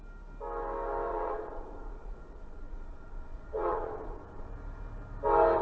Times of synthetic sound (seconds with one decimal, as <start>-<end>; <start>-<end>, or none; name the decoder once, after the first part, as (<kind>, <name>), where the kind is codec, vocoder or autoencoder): 1.1-4.5 (vocoder, Vocos)